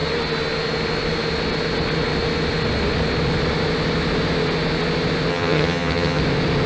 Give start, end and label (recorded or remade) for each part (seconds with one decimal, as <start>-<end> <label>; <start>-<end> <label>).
0.0-5.3 recorded; 5.3-6.2 remade; 6.2-6.7 recorded